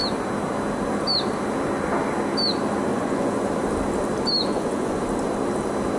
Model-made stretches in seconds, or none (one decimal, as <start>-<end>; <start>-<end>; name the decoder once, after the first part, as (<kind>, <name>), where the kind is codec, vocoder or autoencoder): 2.9-3.5 (vocoder, Vocos); 4.4-5.0